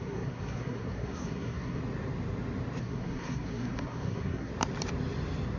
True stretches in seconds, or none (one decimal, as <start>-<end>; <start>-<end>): 1.8-2.8; 4.5-5.6